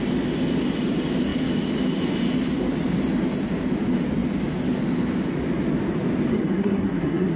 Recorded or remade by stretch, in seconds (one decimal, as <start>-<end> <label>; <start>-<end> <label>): 0.0-6.3 recorded; 6.3-7.4 remade

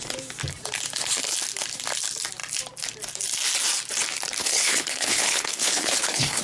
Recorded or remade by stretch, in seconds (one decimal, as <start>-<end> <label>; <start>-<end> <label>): 0.0-4.4 recorded; 4.4-6.4 remade

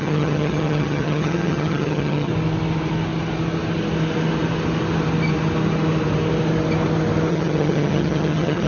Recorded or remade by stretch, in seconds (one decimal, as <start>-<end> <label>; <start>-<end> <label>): 0.0-2.3 remade; 2.3-7.3 recorded; 7.3-8.7 remade

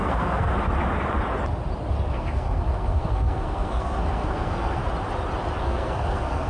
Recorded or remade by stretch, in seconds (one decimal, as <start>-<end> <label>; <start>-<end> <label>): 0.0-0.5 remade; 0.5-2.1 recorded; 2.1-4.8 remade; 4.8-5.6 recorded; 5.6-6.5 remade

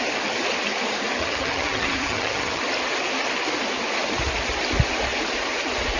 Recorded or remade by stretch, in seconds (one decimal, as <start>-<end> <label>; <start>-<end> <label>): 0.0-1.2 recorded; 1.2-2.6 remade; 2.6-6.0 recorded

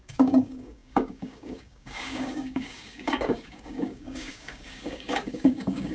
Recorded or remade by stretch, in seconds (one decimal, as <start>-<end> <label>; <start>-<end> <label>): 0.0-5.9 remade